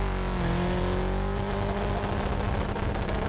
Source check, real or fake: real